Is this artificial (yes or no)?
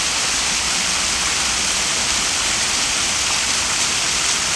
no